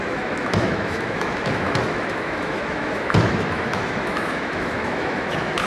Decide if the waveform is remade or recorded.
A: remade